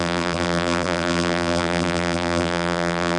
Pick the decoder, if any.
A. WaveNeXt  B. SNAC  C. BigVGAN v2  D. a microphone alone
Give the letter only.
C